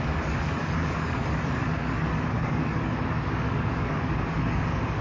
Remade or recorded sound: remade